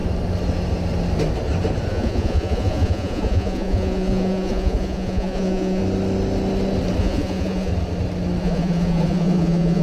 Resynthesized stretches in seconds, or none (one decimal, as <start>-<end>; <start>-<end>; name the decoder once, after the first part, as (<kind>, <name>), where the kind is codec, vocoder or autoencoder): 1.9-5.8 (vocoder, Vocos); 7.0-7.7; 8.4-9.8